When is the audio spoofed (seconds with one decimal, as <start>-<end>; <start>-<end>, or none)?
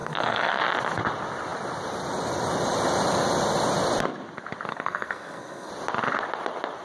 0.0-0.6; 4.7-5.7